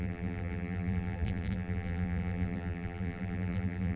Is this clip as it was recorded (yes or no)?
no